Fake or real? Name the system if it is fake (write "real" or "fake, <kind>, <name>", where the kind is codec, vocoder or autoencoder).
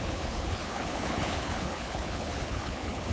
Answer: fake, codec, HILCodec